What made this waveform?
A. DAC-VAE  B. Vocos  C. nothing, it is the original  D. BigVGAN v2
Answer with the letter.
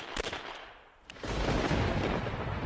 C